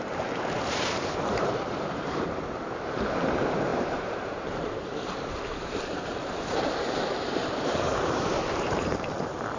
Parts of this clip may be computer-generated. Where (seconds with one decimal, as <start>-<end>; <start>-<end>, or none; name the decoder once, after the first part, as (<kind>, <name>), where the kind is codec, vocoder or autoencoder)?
0.0-9.6 (vocoder, BigVGAN v2)